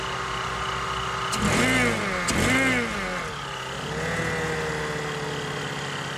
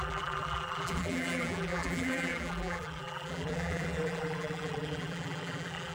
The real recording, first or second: first